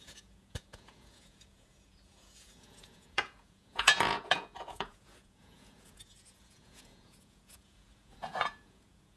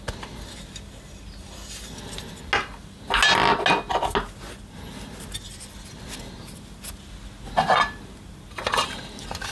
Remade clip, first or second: first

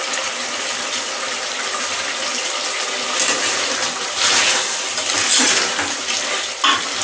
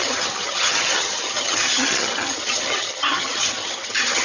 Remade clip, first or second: second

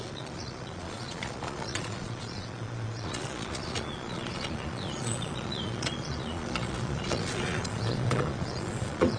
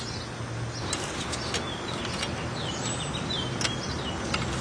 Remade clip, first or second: first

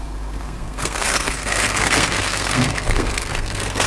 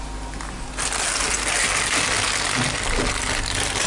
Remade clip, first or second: first